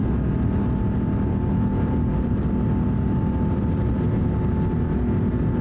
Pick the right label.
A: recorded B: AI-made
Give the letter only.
A